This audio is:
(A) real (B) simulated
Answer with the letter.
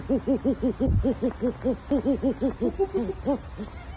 A